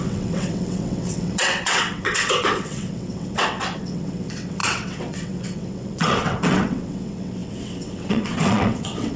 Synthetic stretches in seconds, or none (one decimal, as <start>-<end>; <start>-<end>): 0.0-9.2